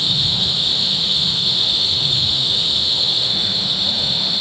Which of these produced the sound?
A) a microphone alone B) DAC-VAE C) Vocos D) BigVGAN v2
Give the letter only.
B